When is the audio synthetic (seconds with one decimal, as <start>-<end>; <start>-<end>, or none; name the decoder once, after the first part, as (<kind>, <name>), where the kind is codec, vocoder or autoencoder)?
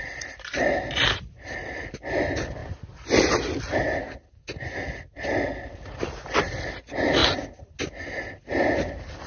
none